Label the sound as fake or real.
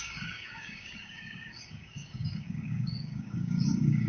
fake